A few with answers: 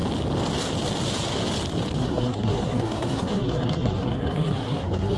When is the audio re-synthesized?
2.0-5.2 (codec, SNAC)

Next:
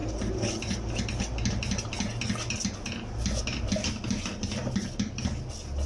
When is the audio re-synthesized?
none

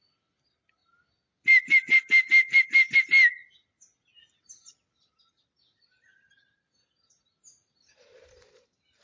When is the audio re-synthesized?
none

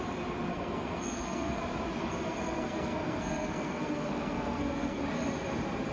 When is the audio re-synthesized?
0.5-1.6 (codec, SNAC); 2.0-5.0

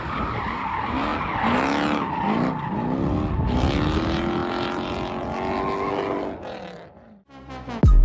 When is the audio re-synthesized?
none